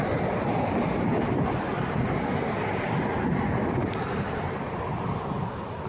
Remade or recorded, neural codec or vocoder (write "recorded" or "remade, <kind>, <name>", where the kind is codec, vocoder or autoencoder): recorded